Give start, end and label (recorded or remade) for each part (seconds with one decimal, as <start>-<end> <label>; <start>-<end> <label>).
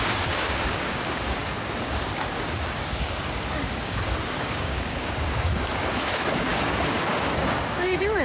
0.0-8.2 remade